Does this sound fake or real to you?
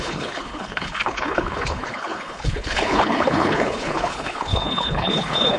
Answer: fake